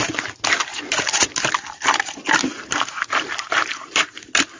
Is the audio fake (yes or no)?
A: no